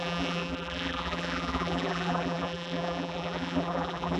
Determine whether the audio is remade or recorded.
remade